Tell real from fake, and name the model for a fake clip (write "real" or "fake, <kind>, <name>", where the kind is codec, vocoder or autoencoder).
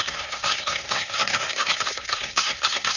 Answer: fake, codec, SNAC